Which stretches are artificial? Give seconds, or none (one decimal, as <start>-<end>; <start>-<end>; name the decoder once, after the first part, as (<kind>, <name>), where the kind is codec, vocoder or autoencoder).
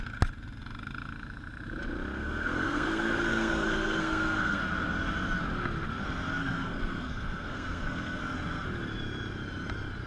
2.2-4.6 (codec, SNAC); 6.4-8.2